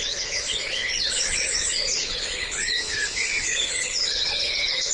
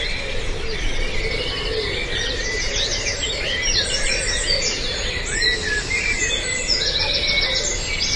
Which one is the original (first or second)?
second